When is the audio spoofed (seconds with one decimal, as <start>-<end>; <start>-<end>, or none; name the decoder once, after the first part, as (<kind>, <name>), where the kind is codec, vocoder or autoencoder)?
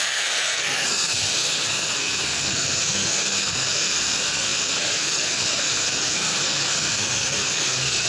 0.0-8.1 (codec, SNAC)